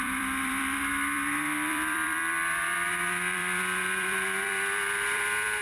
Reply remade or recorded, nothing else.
remade